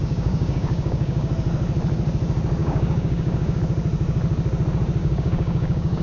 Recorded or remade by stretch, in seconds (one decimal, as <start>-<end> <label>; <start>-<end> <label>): 0.0-1.3 remade; 1.3-2.6 recorded; 2.6-3.6 remade; 3.6-5.0 recorded; 5.0-6.0 remade